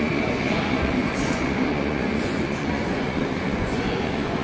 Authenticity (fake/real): fake